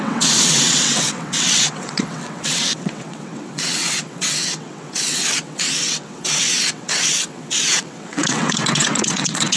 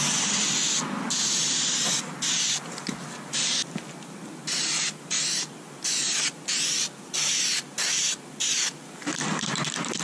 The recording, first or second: second